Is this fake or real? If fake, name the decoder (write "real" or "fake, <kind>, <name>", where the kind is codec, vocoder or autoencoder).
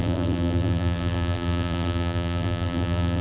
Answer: fake, vocoder, BigVGAN v2